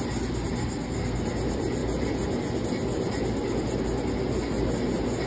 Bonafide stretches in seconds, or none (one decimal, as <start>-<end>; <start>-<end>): 0.0-0.6; 1.2-5.3